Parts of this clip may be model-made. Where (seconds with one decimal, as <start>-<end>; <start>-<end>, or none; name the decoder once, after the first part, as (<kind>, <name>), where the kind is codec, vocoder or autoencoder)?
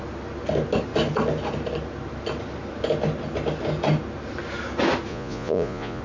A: 5.1-6.0 (vocoder, Vocos)